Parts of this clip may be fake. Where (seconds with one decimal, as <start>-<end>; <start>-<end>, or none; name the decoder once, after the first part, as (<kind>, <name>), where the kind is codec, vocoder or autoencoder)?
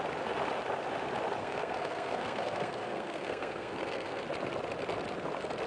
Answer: 1.4-4.2 (codec, SNAC)